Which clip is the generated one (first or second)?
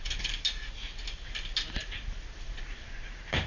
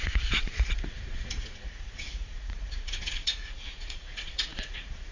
second